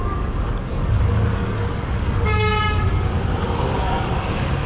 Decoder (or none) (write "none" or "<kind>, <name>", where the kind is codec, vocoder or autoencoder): codec, DAC